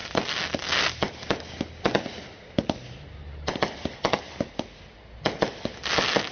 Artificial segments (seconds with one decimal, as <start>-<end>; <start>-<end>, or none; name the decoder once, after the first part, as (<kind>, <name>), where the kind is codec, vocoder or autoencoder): none